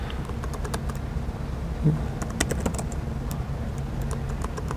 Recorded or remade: recorded